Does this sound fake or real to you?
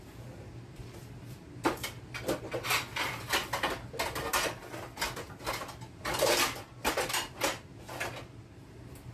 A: real